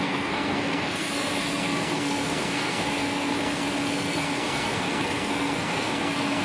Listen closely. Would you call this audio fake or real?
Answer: fake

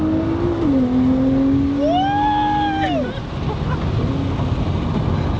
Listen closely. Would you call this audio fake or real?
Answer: real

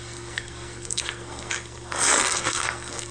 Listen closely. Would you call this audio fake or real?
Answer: fake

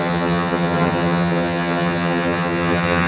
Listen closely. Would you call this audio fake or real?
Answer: fake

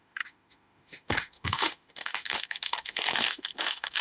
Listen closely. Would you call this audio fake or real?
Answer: fake